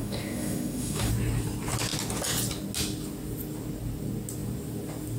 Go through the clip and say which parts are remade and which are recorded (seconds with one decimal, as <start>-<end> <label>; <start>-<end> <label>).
0.0-1.1 remade; 1.1-5.2 recorded